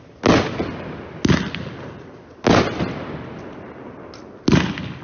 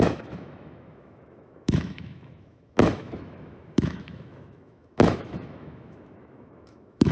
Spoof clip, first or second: second